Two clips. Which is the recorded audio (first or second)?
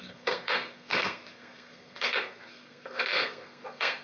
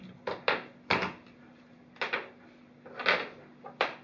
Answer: second